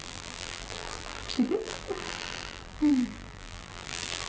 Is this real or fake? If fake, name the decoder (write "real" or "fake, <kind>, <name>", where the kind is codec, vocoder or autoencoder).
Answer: fake, vocoder, BigVGAN v2